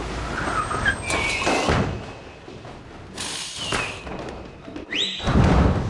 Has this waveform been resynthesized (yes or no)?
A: no